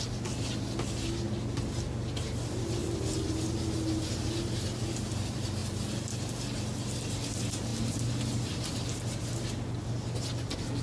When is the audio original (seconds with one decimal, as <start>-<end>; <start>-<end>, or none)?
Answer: 0.0-10.8